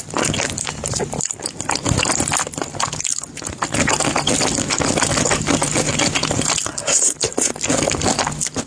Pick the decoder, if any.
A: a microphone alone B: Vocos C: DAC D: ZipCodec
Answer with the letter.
A